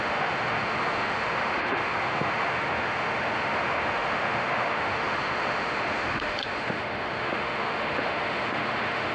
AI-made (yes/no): yes